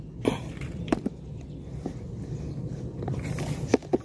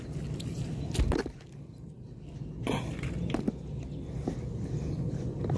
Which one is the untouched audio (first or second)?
second